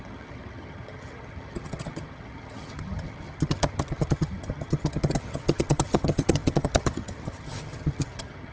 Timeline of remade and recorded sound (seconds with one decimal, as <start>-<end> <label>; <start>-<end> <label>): 0.0-8.5 remade